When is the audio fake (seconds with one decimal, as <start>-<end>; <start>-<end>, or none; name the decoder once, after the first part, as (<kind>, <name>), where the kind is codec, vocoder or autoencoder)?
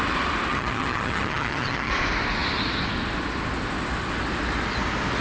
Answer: 0.5-1.9 (vocoder, HiFi-GAN)